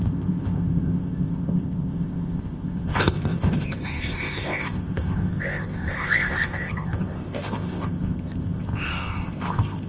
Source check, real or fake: fake